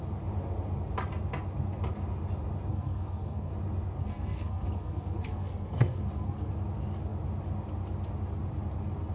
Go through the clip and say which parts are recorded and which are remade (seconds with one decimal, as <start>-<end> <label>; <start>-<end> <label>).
0.0-2.7 recorded; 2.7-3.5 remade; 3.5-4.0 recorded; 4.0-6.5 remade; 6.5-9.1 recorded